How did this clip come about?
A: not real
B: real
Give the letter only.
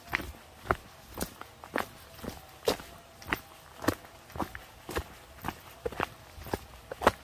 B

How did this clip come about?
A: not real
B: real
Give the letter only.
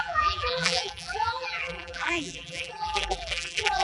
A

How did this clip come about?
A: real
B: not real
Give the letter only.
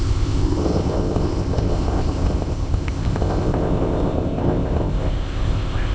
B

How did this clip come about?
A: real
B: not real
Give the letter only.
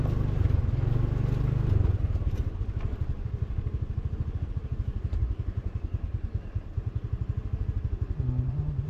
A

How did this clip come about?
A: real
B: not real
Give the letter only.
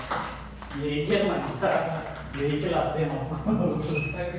A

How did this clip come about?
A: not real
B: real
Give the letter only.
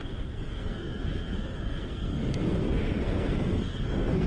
A